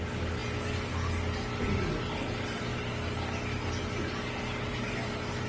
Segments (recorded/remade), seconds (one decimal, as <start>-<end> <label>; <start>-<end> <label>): 0.0-5.5 recorded